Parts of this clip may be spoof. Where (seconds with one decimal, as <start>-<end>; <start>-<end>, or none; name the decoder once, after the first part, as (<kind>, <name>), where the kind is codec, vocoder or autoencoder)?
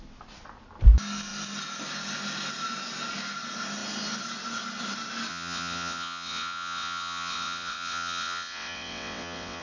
5.3-9.6 (vocoder, WaveNeXt)